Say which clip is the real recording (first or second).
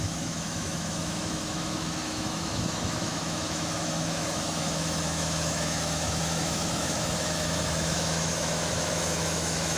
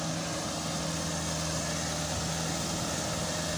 second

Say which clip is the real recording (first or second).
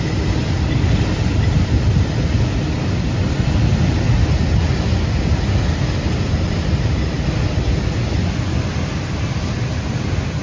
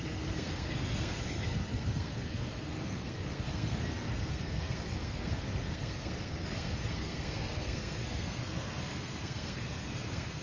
first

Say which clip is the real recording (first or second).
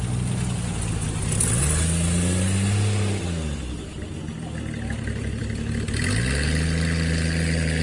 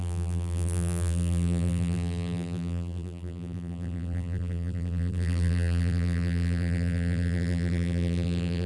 first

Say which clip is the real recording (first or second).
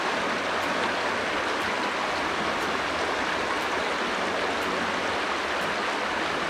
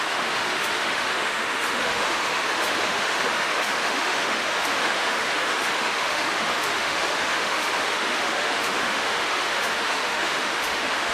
first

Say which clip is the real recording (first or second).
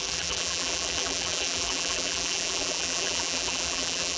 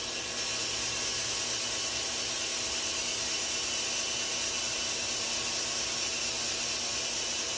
second